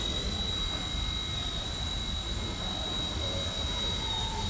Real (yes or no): yes